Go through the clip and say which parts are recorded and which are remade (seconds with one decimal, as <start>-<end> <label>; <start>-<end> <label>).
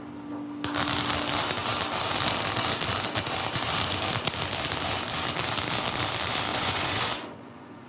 0.0-6.5 recorded; 6.5-7.9 remade